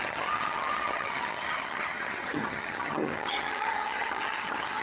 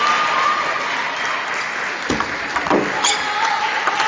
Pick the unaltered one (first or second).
second